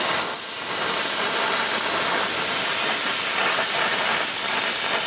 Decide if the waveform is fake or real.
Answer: real